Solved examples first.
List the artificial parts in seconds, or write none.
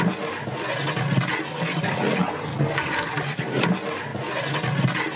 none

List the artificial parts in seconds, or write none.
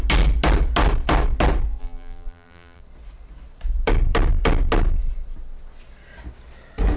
1.8-2.8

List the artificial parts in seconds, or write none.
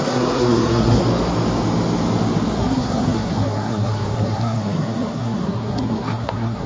0.0-1.0; 2.6-6.7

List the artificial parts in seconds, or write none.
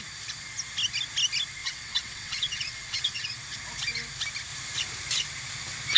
1.6-3.4